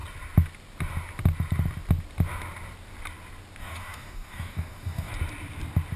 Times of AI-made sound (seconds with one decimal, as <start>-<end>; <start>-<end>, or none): 3.6-5.1